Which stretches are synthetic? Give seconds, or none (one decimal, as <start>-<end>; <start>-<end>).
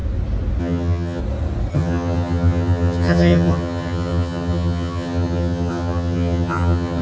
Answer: 0.6-1.2; 1.7-7.0